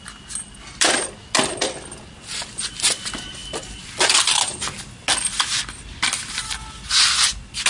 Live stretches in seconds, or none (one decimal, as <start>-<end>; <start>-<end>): 0.0-7.7